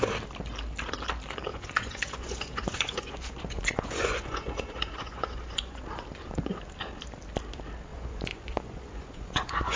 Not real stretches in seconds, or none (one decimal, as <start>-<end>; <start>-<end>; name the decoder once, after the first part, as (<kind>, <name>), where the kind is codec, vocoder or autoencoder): 1.5-5.8 (vocoder, Vocos); 7.9-9.8